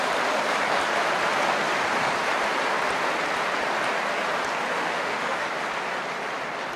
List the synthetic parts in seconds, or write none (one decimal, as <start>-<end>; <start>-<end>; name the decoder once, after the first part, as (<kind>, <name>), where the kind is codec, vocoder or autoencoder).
4.7-5.5 (autoencoder, DAC-VAE)